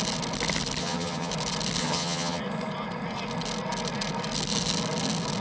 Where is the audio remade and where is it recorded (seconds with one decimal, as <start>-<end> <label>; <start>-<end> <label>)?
0.0-0.8 recorded; 0.8-1.3 remade; 1.3-1.8 recorded; 1.8-2.4 remade; 2.4-5.4 recorded